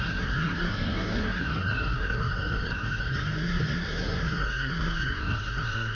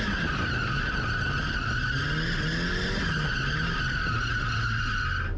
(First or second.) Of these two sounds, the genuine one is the second